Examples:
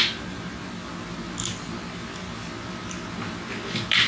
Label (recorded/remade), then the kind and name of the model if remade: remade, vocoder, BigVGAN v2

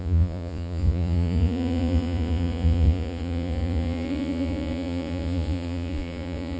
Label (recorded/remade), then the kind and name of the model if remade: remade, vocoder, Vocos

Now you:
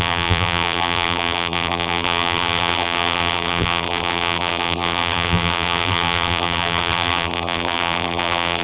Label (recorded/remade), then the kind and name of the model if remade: remade, vocoder, BigVGAN v2